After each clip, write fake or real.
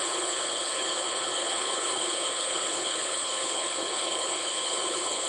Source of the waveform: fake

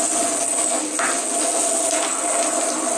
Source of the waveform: real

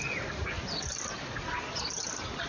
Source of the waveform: real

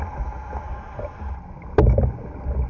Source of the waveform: real